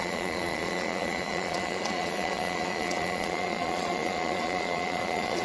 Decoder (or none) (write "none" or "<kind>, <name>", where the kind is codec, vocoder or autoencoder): vocoder, Vocos